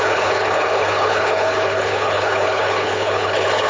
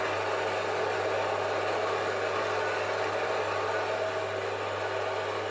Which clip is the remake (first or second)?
first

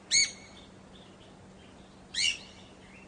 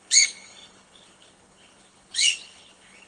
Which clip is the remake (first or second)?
second